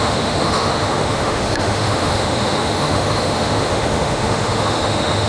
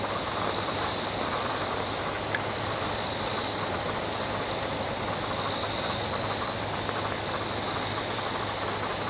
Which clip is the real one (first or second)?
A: second